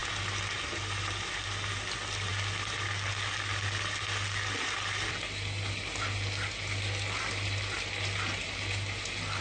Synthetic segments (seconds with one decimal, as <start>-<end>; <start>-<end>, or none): none